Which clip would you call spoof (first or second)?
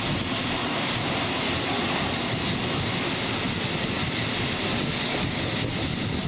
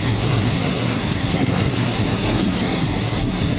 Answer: second